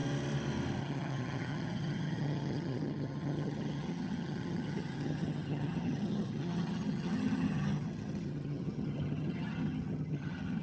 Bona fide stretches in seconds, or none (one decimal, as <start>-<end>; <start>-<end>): 0.0-0.8